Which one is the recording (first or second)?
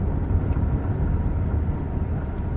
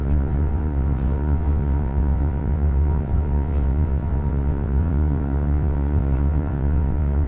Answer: first